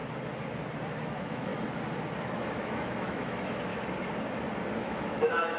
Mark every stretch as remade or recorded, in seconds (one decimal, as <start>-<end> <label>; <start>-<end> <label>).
0.0-1.0 recorded; 1.0-1.5 remade; 1.5-2.2 recorded; 2.2-3.7 remade; 3.7-4.8 recorded; 4.8-5.6 remade